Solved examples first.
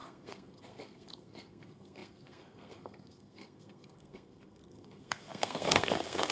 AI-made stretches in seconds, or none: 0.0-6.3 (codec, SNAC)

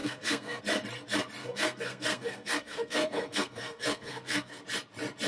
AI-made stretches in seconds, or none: 0.0-0.6 (codec, SNAC); 1.4-4.6

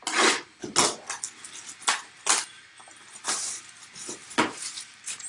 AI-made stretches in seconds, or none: 3.2-5.3 (vocoder, BigVGAN v2)

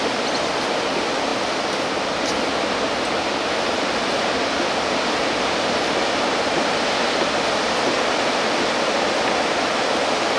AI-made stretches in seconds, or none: none

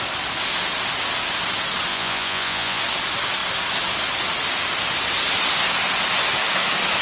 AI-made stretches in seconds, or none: 1.9-2.8 (vocoder, Vocos)

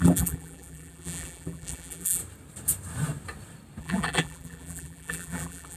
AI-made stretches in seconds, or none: 0.0-2.2 (vocoder, BigVGAN v2); 3.8-5.8